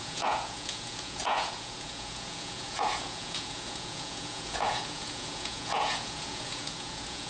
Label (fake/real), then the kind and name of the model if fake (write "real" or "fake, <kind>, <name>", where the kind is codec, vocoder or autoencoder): fake, vocoder, Vocos